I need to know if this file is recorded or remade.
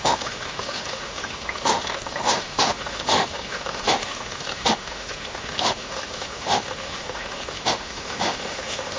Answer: remade